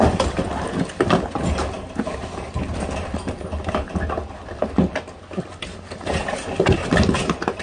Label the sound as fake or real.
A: real